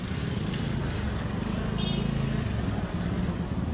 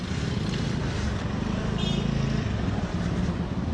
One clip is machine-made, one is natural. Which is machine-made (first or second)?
second